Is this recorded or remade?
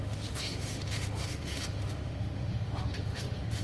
remade